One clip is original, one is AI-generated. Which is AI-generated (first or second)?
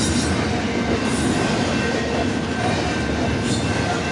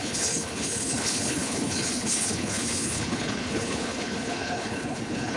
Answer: second